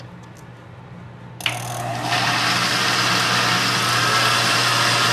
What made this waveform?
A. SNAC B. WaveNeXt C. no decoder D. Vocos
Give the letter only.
C